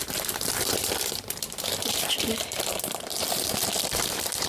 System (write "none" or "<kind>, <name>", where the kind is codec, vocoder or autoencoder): vocoder, BigVGAN v2